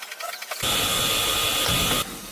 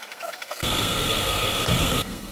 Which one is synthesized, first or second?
second